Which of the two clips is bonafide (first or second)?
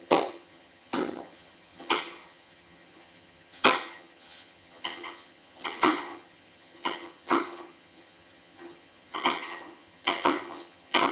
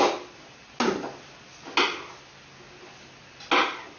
second